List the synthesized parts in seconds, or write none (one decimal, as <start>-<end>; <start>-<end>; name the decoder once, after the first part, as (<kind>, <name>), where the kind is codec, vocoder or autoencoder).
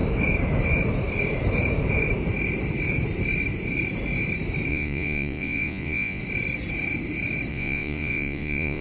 4.7-6.2 (vocoder, Vocos); 7.5-8.8